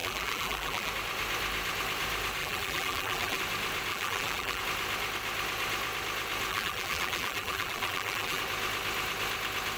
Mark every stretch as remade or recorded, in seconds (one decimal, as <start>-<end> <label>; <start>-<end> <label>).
0.0-0.9 remade; 0.9-2.4 recorded; 2.4-3.4 remade; 3.4-3.9 recorded; 3.9-4.6 remade; 4.6-6.5 recorded; 6.5-8.4 remade; 8.4-9.8 recorded